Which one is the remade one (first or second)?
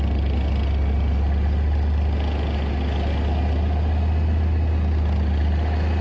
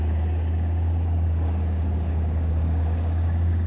second